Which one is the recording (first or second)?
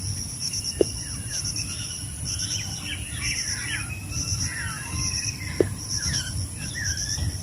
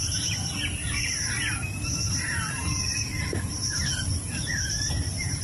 first